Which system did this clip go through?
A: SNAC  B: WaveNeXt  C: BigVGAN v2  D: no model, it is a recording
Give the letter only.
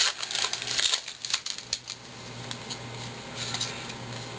D